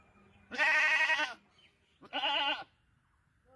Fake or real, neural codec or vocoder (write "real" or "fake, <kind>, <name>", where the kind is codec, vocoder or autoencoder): real